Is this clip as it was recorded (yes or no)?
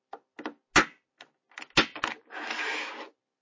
yes